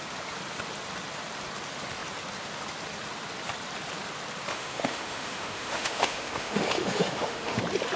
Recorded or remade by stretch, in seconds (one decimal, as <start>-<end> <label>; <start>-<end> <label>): 0.0-4.5 recorded; 4.5-7.6 remade; 7.6-8.0 recorded